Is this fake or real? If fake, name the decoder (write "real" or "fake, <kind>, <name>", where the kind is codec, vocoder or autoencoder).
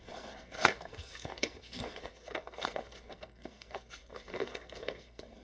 fake, codec, SNAC